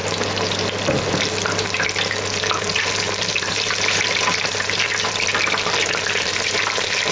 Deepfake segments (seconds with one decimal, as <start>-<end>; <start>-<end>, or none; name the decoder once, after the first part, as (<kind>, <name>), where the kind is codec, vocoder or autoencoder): 2.6-5.3 (vocoder, BigVGAN v2); 6.2-7.1